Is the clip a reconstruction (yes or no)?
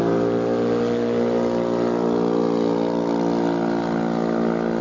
no